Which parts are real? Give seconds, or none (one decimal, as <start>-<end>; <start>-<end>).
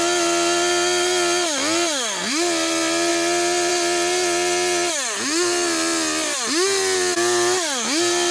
0.0-8.3